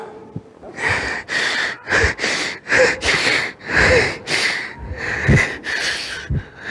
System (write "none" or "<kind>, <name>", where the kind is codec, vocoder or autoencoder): none